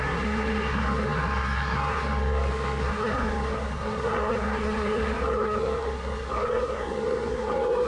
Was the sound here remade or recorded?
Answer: remade